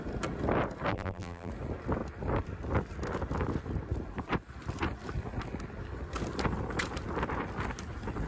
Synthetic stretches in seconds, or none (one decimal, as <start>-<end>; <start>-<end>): 0.9-1.5